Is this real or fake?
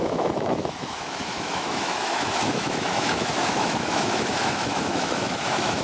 fake